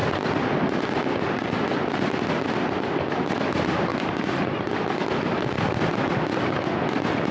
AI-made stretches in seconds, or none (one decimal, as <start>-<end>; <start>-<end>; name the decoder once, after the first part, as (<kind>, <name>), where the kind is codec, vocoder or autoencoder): none